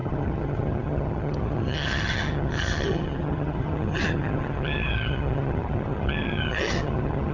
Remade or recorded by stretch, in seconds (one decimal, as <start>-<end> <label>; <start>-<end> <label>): 0.0-7.3 remade

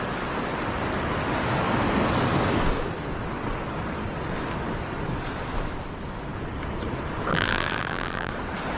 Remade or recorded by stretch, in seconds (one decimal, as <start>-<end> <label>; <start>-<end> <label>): 0.0-7.3 recorded; 7.3-8.3 remade; 8.3-8.8 recorded

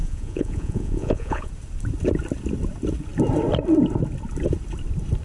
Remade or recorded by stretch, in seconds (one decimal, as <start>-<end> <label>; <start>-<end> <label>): 0.0-1.5 remade; 1.5-5.2 recorded

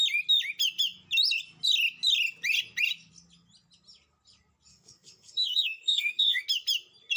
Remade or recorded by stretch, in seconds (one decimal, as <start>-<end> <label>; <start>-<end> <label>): 0.0-4.7 recorded; 4.7-6.4 remade; 6.4-7.2 recorded

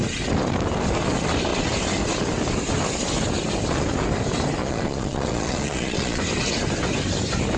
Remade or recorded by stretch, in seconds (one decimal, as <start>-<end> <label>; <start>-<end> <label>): 0.0-4.6 recorded; 4.6-6.2 remade; 6.2-7.6 recorded

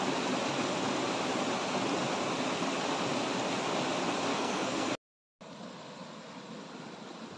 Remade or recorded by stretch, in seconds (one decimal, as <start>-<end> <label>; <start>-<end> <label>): 0.0-4.3 recorded; 4.3-4.9 remade; 4.9-7.4 recorded